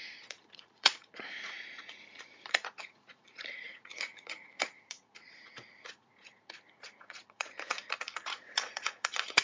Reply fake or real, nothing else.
fake